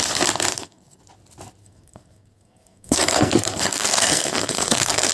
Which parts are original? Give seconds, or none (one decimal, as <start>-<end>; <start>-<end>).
0.0-0.5; 1.0-1.6